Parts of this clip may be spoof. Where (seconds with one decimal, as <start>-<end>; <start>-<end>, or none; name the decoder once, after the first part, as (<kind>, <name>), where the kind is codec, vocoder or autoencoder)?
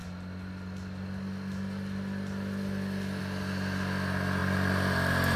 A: none